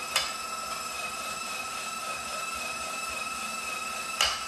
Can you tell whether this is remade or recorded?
recorded